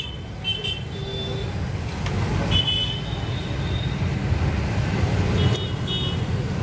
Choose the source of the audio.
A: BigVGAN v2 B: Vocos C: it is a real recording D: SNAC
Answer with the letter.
C